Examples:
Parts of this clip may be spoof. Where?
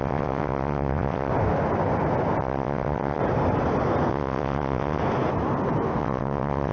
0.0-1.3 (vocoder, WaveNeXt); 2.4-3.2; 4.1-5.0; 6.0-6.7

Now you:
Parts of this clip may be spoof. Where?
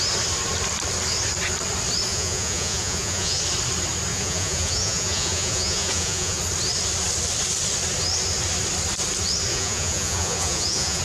2.1-3.4 (vocoder, Vocos); 4.1-6.4; 9.5-11.0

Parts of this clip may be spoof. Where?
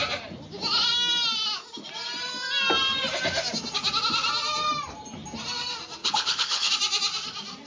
6.0-6.7 (codec, HILCodec)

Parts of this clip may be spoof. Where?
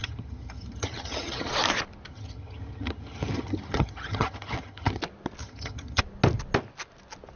0.0-1.5 (vocoder, HiFi-GAN); 2.1-5.0; 5.4-6.0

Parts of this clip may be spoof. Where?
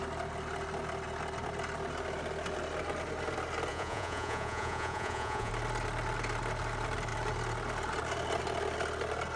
3.7-5.5 (vocoder, Vocos)